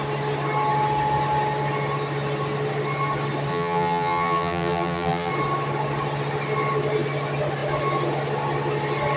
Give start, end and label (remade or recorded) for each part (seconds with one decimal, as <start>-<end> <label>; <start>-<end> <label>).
0.0-3.5 recorded; 3.5-5.3 remade; 5.3-9.2 recorded